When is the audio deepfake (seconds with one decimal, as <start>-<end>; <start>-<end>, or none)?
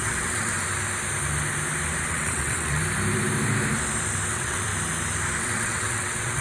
0.0-0.5; 2.1-2.8; 4.3-4.7; 5.4-6.4